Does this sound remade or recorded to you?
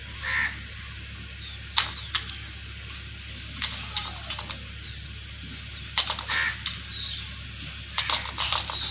recorded